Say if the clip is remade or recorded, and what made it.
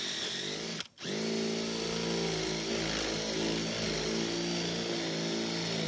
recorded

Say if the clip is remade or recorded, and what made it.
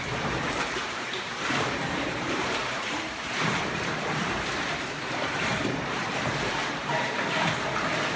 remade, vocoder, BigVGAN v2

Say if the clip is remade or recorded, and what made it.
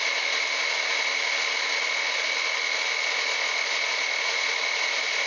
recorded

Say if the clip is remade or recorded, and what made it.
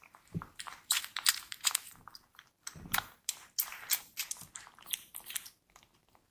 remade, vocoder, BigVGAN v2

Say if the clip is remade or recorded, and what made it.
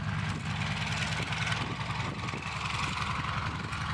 recorded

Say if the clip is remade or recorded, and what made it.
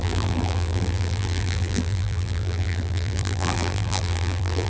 remade, vocoder, BigVGAN v2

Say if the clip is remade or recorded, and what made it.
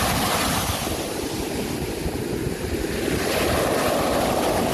recorded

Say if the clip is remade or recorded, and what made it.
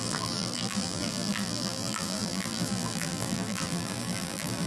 remade, vocoder, BigVGAN v2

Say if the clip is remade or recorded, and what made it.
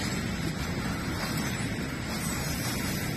recorded